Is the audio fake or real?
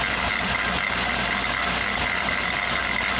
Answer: real